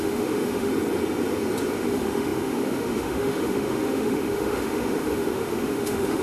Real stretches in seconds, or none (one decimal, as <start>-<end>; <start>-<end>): 0.7-1.8